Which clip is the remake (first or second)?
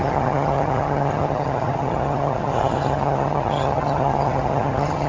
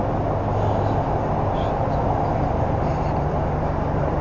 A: first